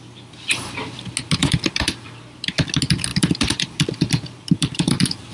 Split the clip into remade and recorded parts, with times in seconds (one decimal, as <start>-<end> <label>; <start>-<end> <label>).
0.0-1.4 recorded; 1.4-2.5 remade; 2.5-3.1 recorded; 3.1-5.3 remade